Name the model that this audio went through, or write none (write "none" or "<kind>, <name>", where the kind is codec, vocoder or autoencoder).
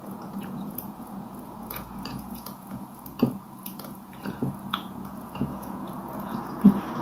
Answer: vocoder, Vocos